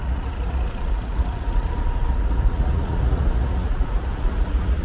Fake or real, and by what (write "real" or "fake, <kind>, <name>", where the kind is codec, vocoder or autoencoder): fake, vocoder, Vocos